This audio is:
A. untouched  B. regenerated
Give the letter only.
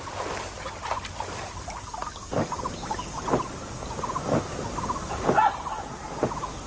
A